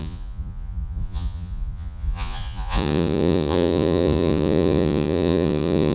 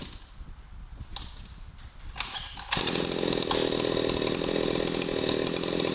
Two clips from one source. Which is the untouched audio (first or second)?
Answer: second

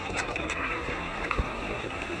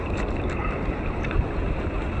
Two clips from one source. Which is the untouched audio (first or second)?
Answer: second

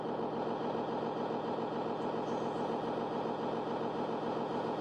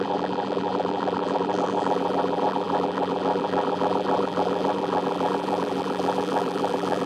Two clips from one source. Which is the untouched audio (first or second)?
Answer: first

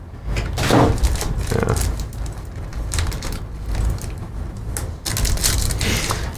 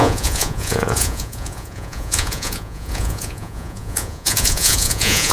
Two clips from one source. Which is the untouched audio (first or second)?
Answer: first